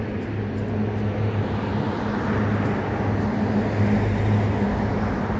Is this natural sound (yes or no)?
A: yes